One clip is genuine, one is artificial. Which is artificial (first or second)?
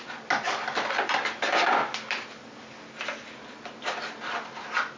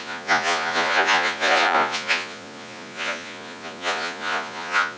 second